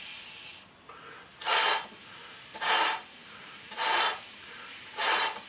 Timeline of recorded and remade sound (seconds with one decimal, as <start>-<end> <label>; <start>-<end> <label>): 0.0-2.2 recorded; 2.2-5.5 remade